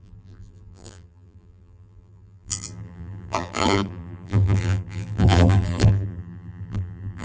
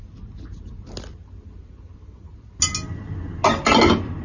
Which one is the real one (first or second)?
second